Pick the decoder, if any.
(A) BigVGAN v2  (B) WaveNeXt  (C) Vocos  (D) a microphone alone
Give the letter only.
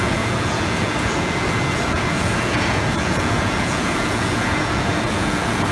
C